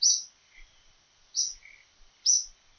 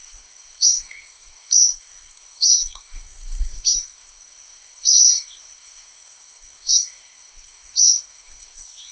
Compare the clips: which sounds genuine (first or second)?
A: first